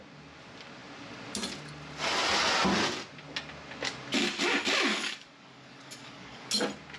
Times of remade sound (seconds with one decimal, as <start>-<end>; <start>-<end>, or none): 4.9-6.6